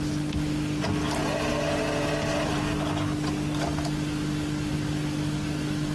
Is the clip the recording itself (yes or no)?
yes